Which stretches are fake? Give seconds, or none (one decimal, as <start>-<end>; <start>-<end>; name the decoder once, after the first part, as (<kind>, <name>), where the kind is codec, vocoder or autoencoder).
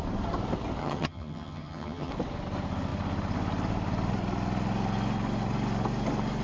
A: 0.8-2.1 (vocoder, HiFi-GAN)